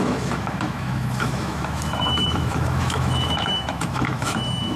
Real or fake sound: fake